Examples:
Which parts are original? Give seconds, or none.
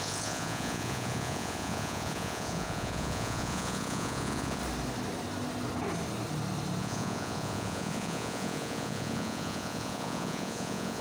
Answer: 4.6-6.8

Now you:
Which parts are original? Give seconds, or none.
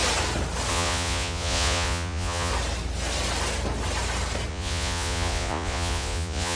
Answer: 0.0-0.7; 2.5-4.5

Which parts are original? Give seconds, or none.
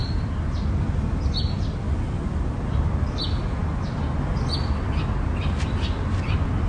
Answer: 0.0-6.7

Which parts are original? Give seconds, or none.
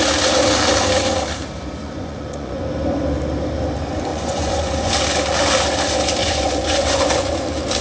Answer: 0.0-1.8; 2.6-4.1; 4.9-6.2; 7.3-7.8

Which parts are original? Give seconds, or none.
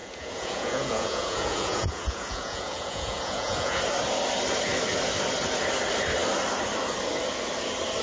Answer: 3.8-8.0